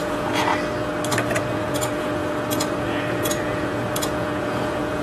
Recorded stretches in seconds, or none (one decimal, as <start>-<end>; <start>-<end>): 0.5-1.4